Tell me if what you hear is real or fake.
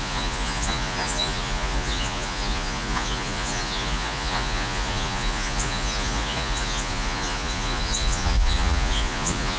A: fake